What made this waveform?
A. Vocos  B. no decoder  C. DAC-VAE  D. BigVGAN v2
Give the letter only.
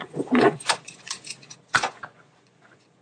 A